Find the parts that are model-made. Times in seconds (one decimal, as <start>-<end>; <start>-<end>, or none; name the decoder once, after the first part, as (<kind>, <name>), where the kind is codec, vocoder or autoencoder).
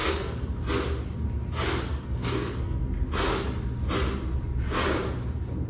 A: 0.0-0.5 (codec, SNAC); 1.9-2.8